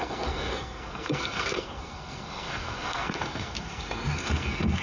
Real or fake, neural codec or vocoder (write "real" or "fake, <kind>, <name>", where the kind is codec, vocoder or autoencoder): fake, codec, SNAC